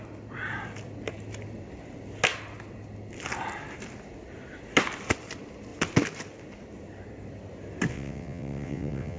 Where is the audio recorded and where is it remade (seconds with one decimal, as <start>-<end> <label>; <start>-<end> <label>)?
0.0-7.9 recorded; 7.9-9.2 remade